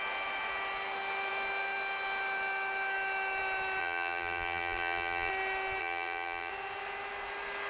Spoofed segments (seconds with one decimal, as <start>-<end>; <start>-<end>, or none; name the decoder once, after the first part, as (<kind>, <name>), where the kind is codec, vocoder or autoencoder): 3.8-5.3 (vocoder, BigVGAN v2); 5.8-6.5